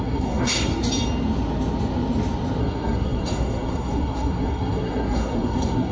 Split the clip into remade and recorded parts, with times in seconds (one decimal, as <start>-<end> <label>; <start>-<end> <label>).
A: 0.0-0.7 remade; 0.7-2.6 recorded; 2.6-5.9 remade